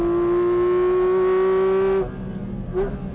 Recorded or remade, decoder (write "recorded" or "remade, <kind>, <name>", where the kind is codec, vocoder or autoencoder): recorded